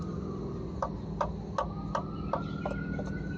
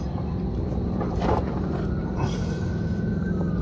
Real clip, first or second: first